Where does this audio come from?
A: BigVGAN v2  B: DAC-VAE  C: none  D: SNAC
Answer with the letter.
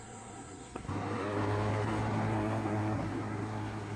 D